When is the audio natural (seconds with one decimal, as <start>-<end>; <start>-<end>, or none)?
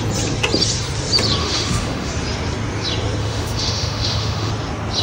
0.0-1.4; 2.1-3.2; 4.5-5.0